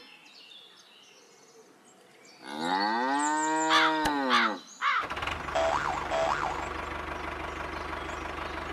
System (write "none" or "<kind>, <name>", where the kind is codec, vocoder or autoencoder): none